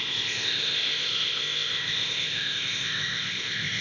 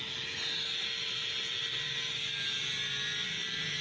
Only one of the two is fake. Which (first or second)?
first